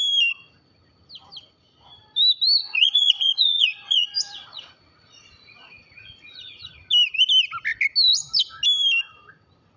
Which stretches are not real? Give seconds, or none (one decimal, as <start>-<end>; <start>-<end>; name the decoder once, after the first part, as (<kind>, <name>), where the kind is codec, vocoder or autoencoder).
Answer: 2.6-6.7 (vocoder, Vocos)